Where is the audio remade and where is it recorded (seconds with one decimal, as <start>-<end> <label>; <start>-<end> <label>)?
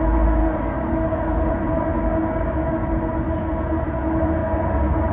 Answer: 0.0-0.4 recorded; 0.4-1.5 remade; 1.5-2.0 recorded; 2.0-2.7 remade; 2.7-4.4 recorded; 4.4-5.1 remade